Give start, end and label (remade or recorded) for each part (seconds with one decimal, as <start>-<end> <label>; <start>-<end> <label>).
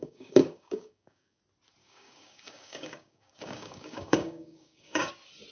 0.0-1.4 remade; 1.4-1.8 recorded; 1.8-5.1 remade; 5.1-5.5 recorded